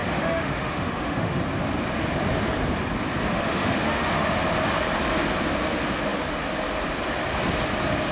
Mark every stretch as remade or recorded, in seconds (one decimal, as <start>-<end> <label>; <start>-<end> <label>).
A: 0.0-1.4 remade; 1.4-3.3 recorded; 3.3-4.3 remade; 4.3-8.1 recorded